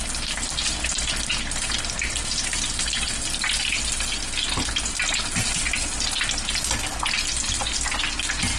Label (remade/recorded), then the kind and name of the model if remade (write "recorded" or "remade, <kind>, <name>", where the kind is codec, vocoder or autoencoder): recorded